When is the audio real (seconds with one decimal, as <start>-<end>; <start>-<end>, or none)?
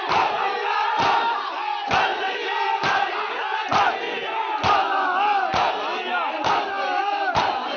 0.0-7.8